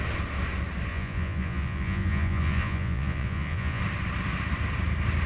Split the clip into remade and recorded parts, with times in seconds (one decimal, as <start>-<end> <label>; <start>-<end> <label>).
0.0-0.9 recorded; 0.9-3.8 remade; 3.8-5.3 recorded